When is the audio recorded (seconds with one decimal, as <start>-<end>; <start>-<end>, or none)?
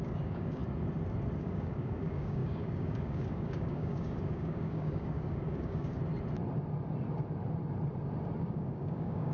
0.6-1.4; 6.0-8.4